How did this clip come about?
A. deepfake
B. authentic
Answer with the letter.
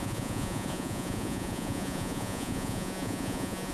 A